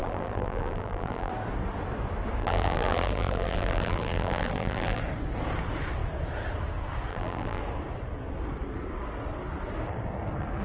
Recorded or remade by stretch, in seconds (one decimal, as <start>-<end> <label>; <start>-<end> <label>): 0.0-1.3 remade; 1.3-2.4 recorded; 2.4-5.0 remade; 5.0-7.1 recorded; 7.1-7.6 remade; 7.6-10.6 recorded